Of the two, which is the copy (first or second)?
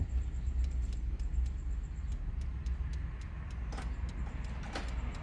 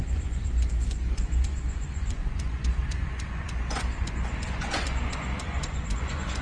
second